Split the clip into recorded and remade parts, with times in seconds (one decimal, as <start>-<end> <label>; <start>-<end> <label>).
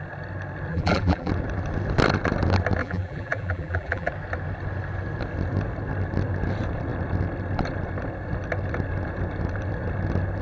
0.0-0.7 recorded; 0.7-1.3 remade; 1.3-2.8 recorded; 2.8-4.1 remade; 4.1-10.4 recorded